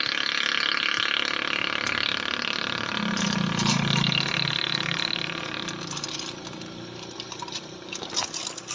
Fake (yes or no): no